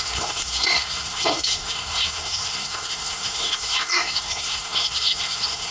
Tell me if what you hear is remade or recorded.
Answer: remade